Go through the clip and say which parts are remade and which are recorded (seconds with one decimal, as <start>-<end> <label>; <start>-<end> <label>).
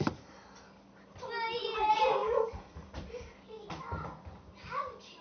0.0-5.2 recorded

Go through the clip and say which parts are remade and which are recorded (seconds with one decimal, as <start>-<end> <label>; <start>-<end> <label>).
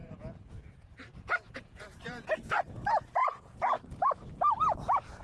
0.0-0.6 remade; 0.6-1.1 recorded; 1.1-2.3 remade; 2.3-3.2 recorded; 3.2-3.8 remade; 3.8-5.2 recorded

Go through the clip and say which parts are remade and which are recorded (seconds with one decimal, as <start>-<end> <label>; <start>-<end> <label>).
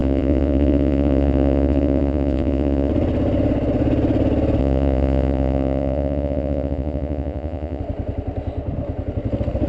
0.0-2.9 remade; 2.9-4.6 recorded; 4.6-7.8 remade; 7.8-9.7 recorded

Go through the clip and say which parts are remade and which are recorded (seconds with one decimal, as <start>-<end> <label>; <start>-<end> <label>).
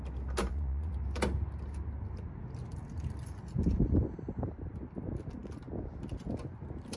0.0-0.4 recorded; 0.4-0.9 remade; 0.9-7.0 recorded